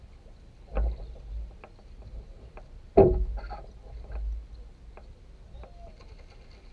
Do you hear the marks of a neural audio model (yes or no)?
no